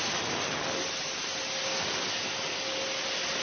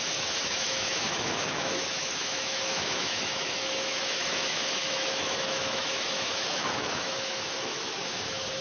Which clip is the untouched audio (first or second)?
first